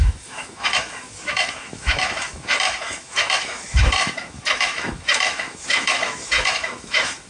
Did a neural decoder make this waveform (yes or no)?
yes